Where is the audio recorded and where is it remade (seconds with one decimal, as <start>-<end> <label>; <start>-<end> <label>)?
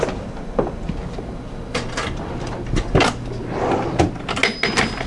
0.0-1.0 recorded; 1.0-4.1 remade; 4.1-5.1 recorded